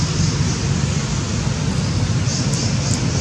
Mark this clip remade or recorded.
recorded